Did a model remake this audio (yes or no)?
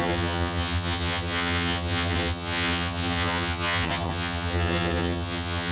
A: yes